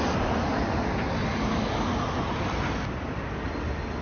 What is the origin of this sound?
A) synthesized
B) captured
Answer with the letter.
B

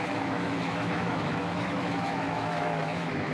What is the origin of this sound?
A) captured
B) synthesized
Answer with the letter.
B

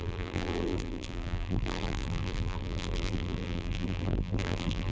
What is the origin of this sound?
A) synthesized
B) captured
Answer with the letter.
A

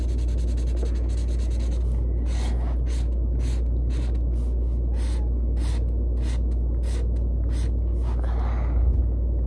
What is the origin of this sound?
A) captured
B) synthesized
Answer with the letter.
A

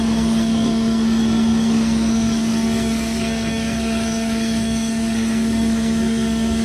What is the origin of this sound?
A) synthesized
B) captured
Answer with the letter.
A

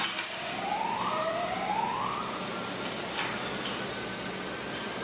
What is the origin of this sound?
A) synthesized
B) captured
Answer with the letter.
B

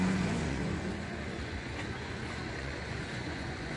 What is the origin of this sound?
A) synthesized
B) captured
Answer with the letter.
A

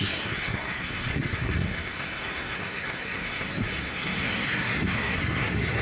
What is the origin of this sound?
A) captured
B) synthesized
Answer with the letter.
B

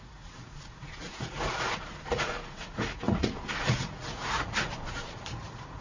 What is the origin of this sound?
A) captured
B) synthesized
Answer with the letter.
B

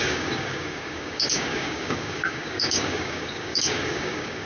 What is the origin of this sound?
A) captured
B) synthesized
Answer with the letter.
B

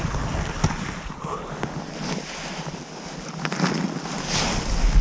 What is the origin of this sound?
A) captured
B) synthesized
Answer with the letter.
A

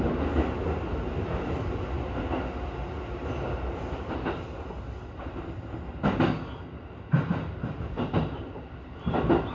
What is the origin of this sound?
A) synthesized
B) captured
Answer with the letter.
B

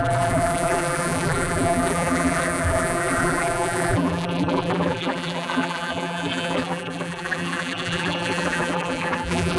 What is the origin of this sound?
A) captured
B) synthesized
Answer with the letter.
B